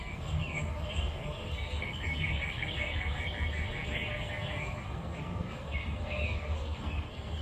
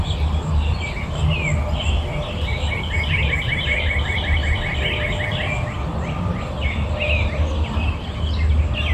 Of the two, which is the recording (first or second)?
second